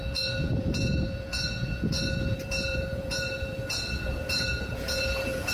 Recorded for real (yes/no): no